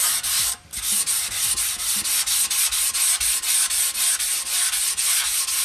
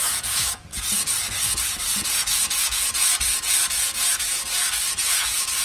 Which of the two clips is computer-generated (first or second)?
second